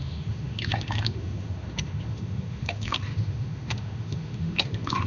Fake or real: fake